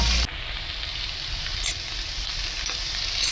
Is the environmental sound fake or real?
real